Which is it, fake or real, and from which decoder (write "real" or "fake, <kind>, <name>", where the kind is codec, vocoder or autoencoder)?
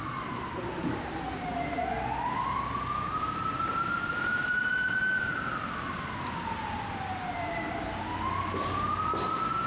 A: real